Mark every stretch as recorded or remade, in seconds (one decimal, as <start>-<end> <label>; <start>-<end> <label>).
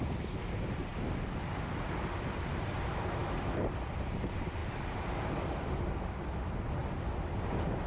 0.0-0.9 remade; 0.9-2.4 recorded; 2.4-4.6 remade; 4.6-5.2 recorded; 5.2-6.8 remade; 6.8-7.9 recorded